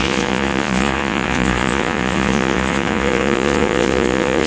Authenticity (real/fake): fake